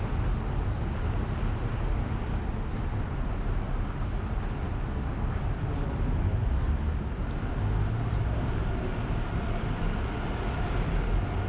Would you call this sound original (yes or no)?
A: yes